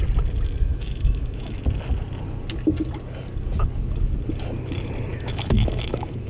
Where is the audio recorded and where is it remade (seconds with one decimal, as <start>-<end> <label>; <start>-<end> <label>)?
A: 0.0-0.7 recorded; 0.7-1.6 remade; 1.6-5.1 recorded; 5.1-6.3 remade